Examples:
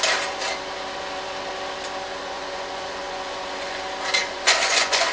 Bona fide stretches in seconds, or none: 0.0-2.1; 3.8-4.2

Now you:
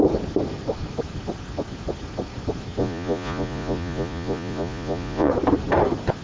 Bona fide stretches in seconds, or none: 0.0-2.8; 5.3-6.2

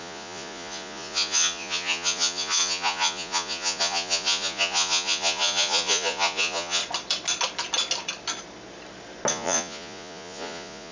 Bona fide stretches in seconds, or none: 6.8-9.3